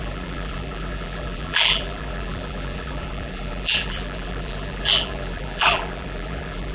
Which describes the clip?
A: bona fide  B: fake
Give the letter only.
B